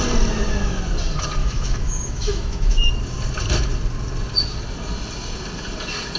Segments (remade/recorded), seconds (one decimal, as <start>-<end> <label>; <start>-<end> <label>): 0.0-1.4 recorded; 1.4-2.9 remade; 2.9-6.2 recorded